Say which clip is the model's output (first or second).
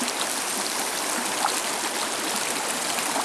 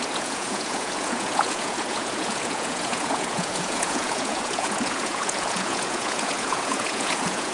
second